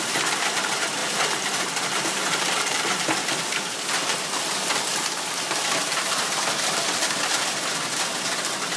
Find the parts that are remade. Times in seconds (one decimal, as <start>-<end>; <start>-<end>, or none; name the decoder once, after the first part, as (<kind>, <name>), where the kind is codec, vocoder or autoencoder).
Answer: 1.0-5.2 (vocoder, BigVGAN v2); 5.8-7.2